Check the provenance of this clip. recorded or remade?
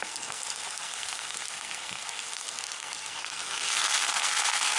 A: remade